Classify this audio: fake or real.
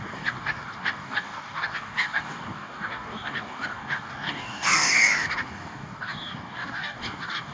fake